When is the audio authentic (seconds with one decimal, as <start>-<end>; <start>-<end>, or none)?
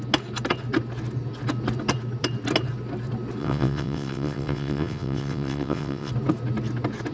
0.0-3.4; 6.1-7.1